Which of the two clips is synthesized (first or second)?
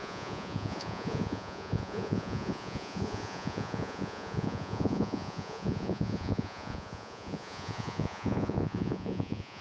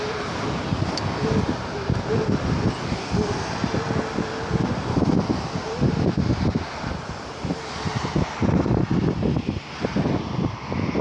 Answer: first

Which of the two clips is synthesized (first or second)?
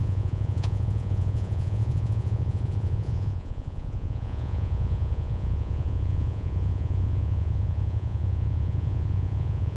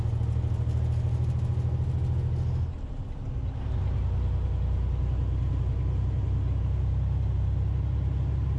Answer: first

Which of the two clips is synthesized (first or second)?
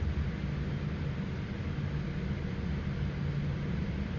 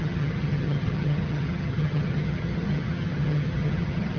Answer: second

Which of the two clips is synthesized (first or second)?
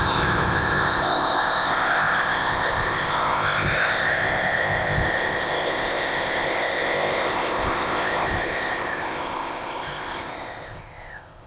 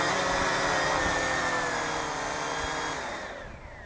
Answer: first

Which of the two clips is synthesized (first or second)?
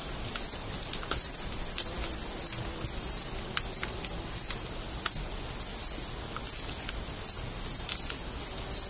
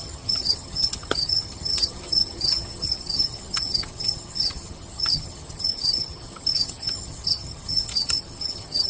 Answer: second